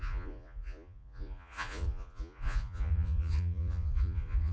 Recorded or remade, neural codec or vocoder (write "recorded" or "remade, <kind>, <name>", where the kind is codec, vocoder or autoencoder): remade, vocoder, Vocos